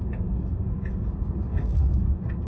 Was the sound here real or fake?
fake